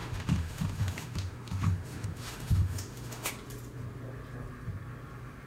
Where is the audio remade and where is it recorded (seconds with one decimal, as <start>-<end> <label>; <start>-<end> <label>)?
0.0-3.3 remade; 3.3-5.5 recorded